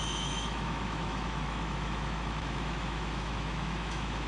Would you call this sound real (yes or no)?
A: no